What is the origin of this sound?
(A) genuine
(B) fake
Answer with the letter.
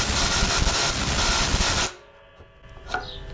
A